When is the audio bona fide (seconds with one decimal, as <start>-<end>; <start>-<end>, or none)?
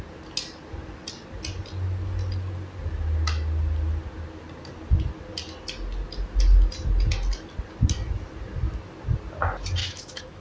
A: 0.0-9.8